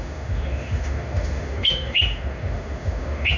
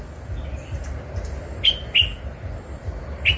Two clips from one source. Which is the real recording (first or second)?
second